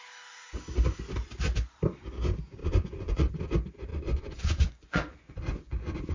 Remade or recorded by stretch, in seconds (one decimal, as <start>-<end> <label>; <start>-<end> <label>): 0.0-2.6 recorded; 2.6-3.3 remade; 3.3-3.9 recorded; 3.9-6.1 remade